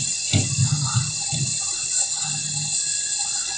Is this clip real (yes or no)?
yes